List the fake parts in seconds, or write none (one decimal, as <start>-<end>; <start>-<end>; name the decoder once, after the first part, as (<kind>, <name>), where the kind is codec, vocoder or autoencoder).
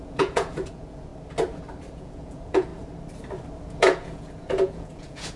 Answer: 0.0-1.1 (vocoder, Vocos); 1.9-2.7; 3.7-5.4